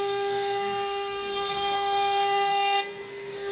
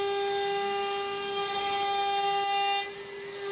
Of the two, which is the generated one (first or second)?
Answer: first